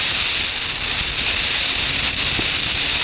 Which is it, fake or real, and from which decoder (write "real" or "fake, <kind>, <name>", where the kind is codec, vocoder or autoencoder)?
real